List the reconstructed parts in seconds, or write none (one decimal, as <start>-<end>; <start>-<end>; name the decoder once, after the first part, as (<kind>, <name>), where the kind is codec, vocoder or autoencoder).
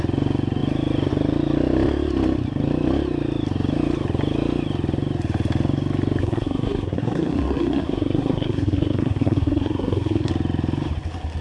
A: 6.2-10.3 (codec, SNAC)